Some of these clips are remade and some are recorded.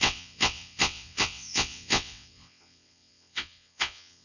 remade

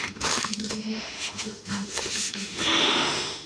remade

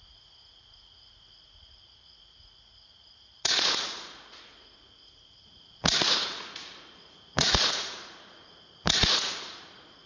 remade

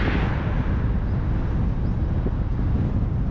recorded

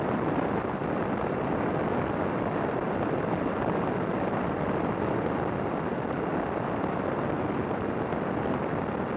recorded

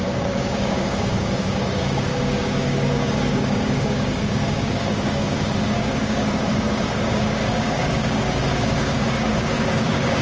remade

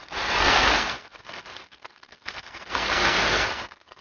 remade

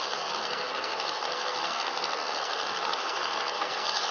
remade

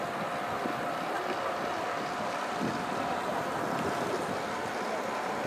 recorded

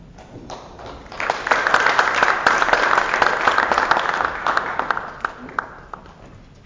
recorded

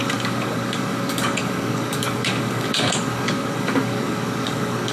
remade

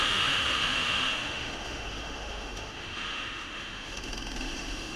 remade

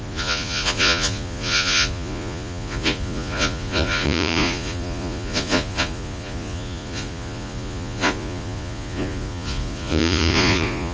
remade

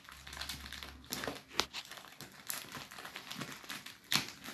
recorded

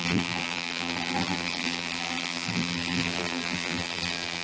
remade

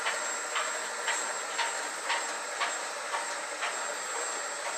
recorded